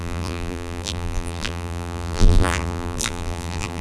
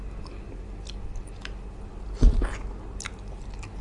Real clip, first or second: second